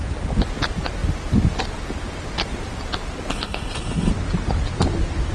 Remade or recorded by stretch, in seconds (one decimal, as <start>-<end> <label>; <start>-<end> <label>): 0.0-3.3 recorded; 3.3-4.1 remade; 4.1-5.3 recorded